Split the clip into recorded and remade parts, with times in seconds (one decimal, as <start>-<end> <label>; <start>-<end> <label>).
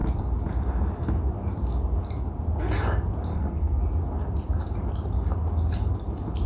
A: 0.0-3.3 recorded; 3.3-3.8 remade; 3.8-6.5 recorded